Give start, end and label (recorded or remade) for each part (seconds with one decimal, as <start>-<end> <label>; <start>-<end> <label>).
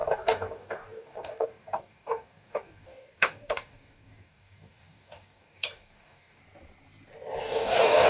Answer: 0.0-6.4 remade; 6.4-7.4 recorded; 7.4-8.1 remade